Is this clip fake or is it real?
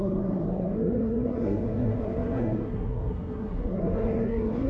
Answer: fake